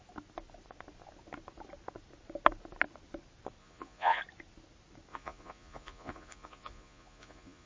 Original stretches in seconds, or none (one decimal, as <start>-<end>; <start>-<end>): 0.0-3.6; 4.2-5.1